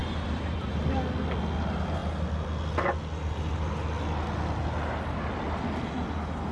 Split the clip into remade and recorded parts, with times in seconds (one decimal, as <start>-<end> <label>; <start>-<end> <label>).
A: 0.0-0.8 remade; 0.8-6.5 recorded